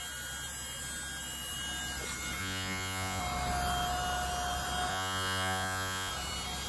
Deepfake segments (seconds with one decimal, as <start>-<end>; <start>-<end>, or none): 2.4-3.2; 4.9-6.1